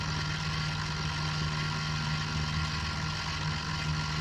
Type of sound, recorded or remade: recorded